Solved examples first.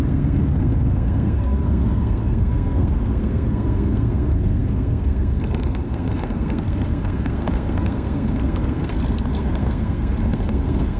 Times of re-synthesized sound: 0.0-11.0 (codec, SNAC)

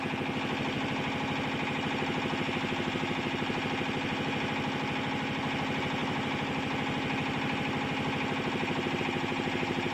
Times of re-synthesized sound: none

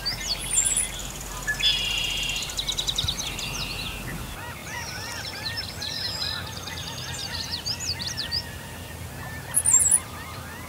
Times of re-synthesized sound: 1.0-3.6 (vocoder, BigVGAN v2); 4.6-6.3; 7.2-9.1

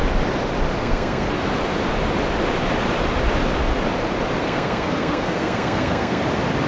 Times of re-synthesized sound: 0.8-1.3 (codec, SNAC); 4.4-6.2

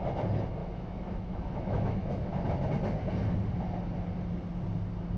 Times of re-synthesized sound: 0.6-2.2 (autoencoder, DAC-VAE)

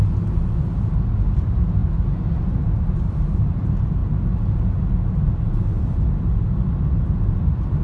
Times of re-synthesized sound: none

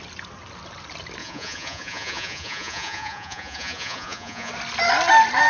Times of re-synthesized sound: 1.2-4.5 (vocoder, Vocos)